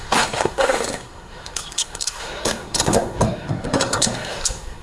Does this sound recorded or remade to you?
remade